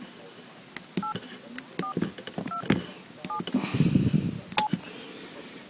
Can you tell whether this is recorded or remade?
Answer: recorded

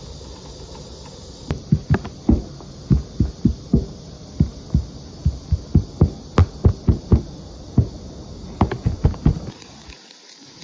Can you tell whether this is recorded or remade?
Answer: recorded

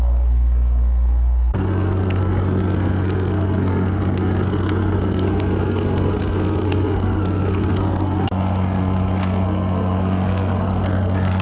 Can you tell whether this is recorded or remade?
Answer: remade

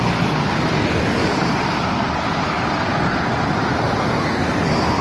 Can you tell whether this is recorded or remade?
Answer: recorded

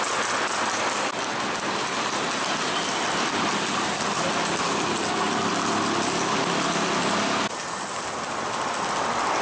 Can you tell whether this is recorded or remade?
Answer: recorded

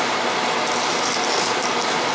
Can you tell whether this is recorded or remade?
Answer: recorded